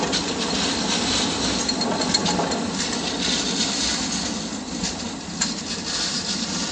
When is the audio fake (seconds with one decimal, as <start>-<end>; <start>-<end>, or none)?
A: none